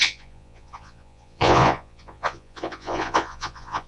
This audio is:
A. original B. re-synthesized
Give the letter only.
B